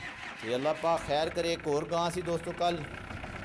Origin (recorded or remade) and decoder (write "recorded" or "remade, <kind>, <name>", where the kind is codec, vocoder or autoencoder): recorded